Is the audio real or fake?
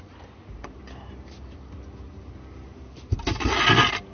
real